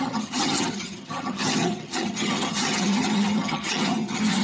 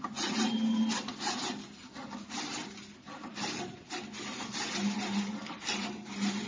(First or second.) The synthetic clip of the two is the first